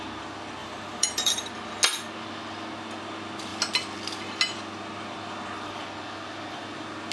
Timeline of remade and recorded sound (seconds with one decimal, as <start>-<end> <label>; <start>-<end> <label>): 0.0-0.6 recorded; 0.6-1.5 remade; 1.5-7.1 recorded